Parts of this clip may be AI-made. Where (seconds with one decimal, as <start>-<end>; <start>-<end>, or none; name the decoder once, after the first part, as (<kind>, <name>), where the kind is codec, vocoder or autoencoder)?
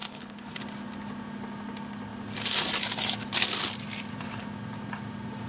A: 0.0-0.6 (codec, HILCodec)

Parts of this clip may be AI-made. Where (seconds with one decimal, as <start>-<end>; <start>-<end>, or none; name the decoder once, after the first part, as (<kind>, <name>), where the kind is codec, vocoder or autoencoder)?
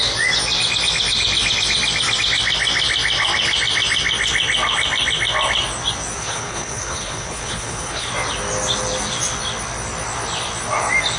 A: 6.2-8.1 (codec, HILCodec)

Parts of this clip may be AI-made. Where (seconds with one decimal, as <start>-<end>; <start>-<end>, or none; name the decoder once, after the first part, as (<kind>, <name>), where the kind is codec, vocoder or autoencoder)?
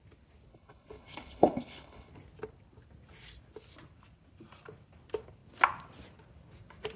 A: 0.5-2.1 (codec, HILCodec)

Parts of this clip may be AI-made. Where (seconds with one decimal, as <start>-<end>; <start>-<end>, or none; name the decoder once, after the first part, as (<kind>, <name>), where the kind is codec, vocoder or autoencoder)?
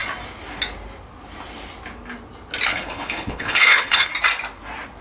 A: 2.7-4.1 (codec, HILCodec)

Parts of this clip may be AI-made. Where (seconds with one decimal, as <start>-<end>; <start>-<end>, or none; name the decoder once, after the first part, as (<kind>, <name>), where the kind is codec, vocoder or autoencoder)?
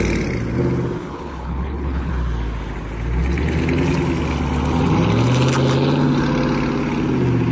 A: 1.0-2.1 (codec, HILCodec)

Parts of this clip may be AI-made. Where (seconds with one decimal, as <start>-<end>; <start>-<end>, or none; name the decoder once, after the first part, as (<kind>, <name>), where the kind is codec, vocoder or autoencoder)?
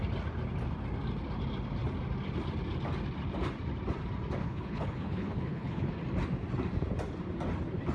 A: 4.4-5.9 (codec, HILCodec)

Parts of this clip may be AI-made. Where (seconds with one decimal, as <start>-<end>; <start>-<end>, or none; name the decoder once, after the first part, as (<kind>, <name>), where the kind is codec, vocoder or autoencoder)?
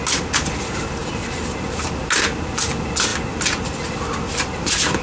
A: none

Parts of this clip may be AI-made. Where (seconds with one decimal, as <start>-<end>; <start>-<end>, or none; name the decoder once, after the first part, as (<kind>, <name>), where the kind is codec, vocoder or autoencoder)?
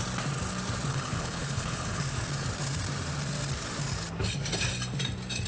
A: 0.9-2.0 (codec, HILCodec)